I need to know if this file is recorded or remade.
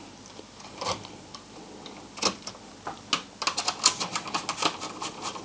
recorded